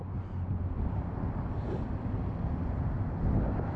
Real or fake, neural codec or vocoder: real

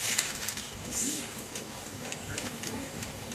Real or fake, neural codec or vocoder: fake, codec, DAC